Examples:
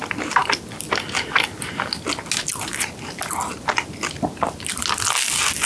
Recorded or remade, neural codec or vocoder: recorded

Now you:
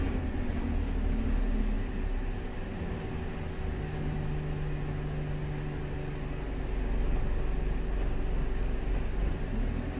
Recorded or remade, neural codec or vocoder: recorded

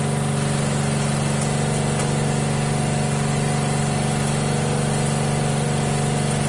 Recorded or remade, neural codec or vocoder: recorded